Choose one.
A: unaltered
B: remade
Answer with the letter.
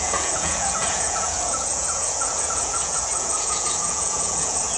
B